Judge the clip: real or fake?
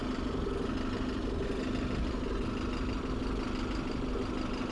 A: real